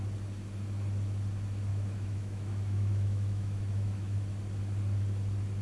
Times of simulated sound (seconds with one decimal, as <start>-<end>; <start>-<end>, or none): 1.7-4.3